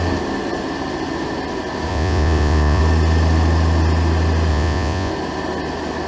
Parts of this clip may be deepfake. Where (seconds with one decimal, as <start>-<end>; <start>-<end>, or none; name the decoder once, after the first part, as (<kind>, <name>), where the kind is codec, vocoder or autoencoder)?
1.9-2.8 (vocoder, Vocos); 4.5-5.1